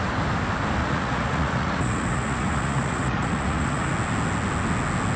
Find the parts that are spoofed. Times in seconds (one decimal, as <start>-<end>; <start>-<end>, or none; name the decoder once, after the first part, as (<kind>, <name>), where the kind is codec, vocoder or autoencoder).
0.8-3.9 (vocoder, Vocos)